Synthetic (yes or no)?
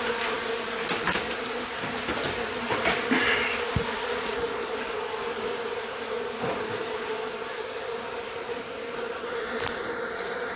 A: yes